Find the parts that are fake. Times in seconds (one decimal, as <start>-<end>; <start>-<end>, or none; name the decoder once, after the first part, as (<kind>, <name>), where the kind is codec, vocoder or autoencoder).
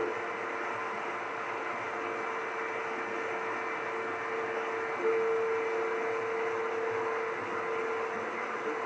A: none